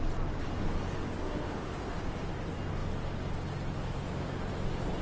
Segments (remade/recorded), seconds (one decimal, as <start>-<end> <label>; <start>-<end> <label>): 0.0-1.2 recorded; 1.2-2.0 remade; 2.0-5.0 recorded